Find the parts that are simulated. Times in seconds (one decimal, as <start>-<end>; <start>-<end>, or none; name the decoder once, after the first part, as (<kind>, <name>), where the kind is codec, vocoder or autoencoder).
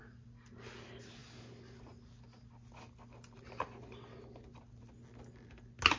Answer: none